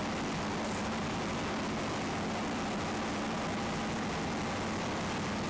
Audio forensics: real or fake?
real